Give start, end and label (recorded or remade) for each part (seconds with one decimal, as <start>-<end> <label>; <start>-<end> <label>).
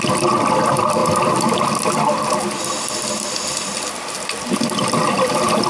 0.0-5.7 recorded